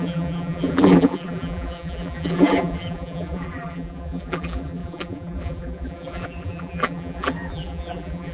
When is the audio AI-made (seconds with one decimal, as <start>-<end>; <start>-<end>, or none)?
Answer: 0.0-8.3